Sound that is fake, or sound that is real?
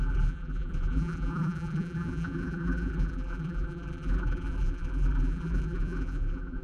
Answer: fake